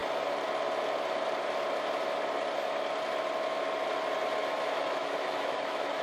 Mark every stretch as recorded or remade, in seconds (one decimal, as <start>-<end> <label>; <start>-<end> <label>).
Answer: 0.0-4.4 recorded; 4.4-6.0 remade